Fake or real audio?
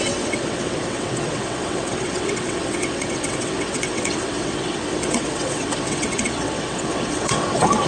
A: fake